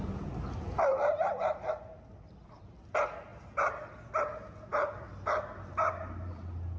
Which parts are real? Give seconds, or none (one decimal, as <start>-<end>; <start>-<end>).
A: 0.0-6.8